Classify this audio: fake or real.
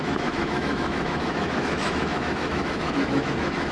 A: fake